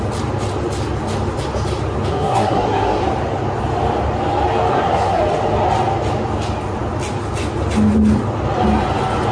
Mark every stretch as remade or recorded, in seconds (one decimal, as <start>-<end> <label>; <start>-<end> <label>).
0.0-2.1 recorded; 2.1-3.0 remade; 3.0-4.7 recorded; 4.7-5.2 remade; 5.2-9.3 recorded